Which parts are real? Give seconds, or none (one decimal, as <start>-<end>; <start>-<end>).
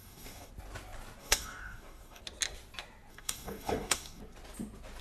0.5-1.2; 2.2-3.1; 4.2-5.0